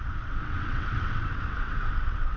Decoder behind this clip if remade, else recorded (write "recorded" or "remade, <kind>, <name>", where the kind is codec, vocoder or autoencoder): remade, vocoder, WaveNeXt